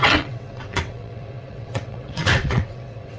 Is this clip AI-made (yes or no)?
yes